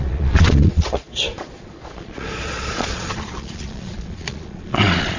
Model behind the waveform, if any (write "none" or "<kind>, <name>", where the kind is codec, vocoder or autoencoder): vocoder, Vocos